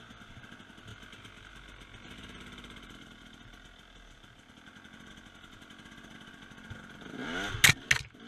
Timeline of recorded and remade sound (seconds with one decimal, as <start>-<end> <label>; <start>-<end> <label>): 0.0-8.3 recorded